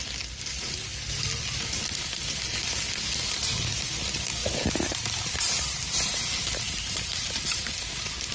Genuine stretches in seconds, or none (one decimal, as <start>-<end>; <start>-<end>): 0.0-4.4; 7.7-8.3